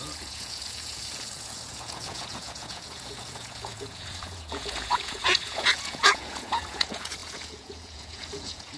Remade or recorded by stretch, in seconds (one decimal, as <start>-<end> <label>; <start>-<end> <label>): 0.0-8.8 remade